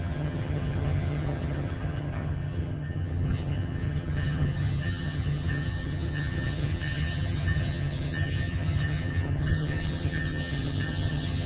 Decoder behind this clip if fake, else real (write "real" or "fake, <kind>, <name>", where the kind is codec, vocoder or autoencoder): fake, vocoder, HiFi-GAN